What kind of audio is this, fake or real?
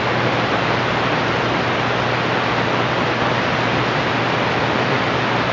real